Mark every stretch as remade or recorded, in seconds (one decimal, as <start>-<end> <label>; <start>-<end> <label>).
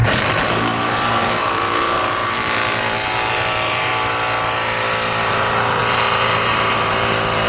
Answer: 0.0-3.9 remade; 3.9-5.3 recorded; 5.3-7.5 remade